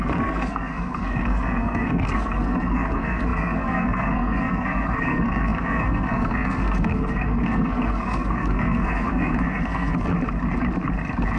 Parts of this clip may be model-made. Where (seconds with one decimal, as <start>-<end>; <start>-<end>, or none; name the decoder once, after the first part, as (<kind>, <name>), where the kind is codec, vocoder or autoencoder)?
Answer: 0.0-10.1 (codec, SNAC)